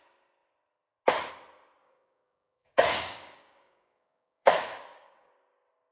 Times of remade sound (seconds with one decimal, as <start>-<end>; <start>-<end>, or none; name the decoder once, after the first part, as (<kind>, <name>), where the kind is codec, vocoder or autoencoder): 1.8-5.3 (codec, DAC)